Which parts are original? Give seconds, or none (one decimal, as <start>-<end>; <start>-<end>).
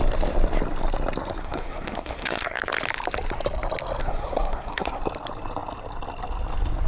0.0-1.4; 2.6-4.0; 5.0-6.9